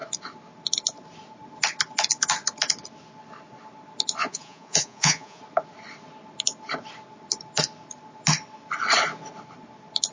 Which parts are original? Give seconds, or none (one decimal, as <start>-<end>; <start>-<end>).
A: 0.0-4.2; 5.4-10.1